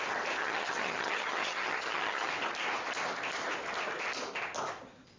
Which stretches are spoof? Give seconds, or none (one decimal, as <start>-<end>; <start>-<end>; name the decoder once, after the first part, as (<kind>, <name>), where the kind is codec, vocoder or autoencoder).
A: 0.4-2.3 (vocoder, HiFi-GAN)

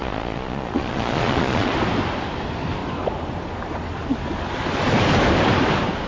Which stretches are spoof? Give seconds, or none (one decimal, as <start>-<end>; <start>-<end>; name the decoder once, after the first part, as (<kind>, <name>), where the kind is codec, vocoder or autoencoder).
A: 0.0-1.7 (vocoder, Vocos)

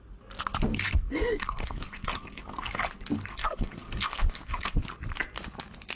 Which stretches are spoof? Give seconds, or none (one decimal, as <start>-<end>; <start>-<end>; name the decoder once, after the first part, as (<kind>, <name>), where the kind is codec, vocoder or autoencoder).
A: 0.7-2.8 (codec, SNAC); 3.3-4.8

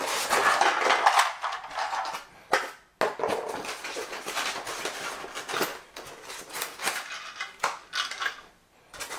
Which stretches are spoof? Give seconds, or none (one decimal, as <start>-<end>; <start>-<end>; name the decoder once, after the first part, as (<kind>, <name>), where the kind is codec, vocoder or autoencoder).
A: none